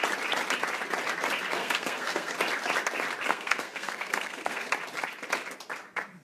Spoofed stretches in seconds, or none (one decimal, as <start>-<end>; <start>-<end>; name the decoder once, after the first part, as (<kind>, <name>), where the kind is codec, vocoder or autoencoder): 1.6-2.3 (codec, SNAC); 3.3-4.7